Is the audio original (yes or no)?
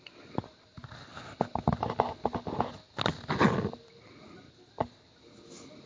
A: yes